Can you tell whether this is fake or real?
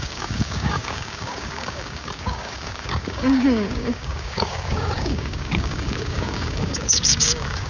fake